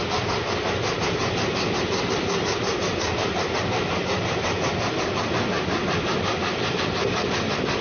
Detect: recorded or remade recorded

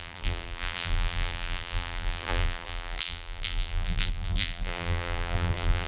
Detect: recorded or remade remade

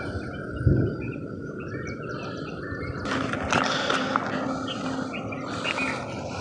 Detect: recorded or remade recorded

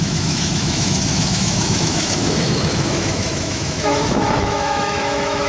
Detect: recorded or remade remade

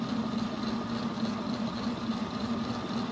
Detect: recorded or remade recorded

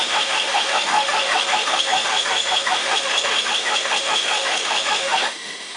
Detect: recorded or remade remade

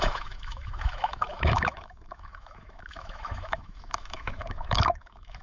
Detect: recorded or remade remade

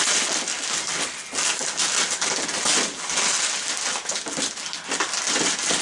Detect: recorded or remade recorded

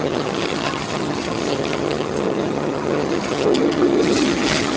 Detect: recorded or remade remade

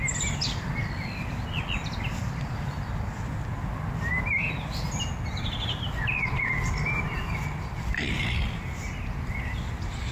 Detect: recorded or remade recorded